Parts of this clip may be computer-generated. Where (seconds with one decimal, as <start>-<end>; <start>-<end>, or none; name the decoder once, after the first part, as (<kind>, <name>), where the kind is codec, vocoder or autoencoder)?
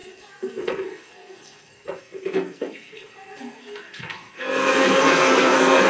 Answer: 0.0-5.9 (codec, SNAC)